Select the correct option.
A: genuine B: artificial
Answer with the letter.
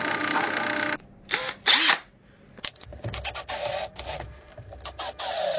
A